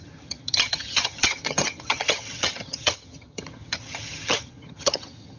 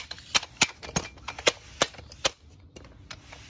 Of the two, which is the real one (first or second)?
second